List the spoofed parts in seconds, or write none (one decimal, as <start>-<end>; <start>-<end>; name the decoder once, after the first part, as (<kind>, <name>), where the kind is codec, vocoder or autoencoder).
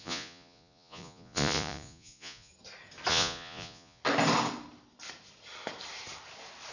0.0-2.5 (vocoder, Vocos); 3.1-4.0